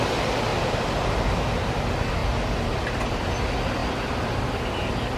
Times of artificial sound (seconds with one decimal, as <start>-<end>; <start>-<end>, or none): none